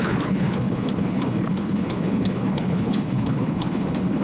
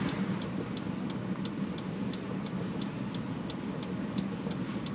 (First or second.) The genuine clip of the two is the second